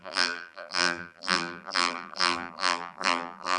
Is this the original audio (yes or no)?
no